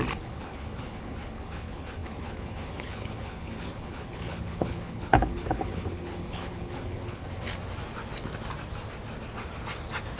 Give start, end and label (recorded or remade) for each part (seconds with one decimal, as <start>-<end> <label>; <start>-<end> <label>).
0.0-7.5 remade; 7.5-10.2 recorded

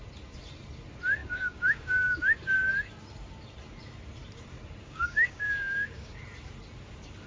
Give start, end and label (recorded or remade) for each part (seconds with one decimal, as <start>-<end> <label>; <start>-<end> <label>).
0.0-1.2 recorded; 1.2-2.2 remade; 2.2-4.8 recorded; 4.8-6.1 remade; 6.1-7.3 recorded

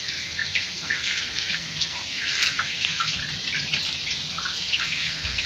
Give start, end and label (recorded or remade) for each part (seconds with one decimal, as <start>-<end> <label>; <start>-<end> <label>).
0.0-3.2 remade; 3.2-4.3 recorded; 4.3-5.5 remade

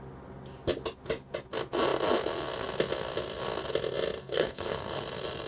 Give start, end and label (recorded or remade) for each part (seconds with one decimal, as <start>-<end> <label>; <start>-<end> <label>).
0.0-4.2 recorded; 4.2-5.0 remade; 5.0-5.5 recorded

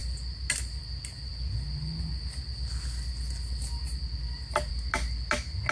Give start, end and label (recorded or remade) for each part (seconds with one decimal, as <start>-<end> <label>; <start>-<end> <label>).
0.0-5.7 recorded

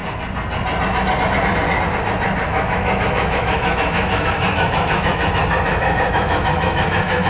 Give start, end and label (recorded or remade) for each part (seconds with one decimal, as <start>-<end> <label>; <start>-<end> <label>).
0.0-2.5 recorded; 2.5-5.3 remade; 5.3-5.7 recorded; 5.7-7.3 remade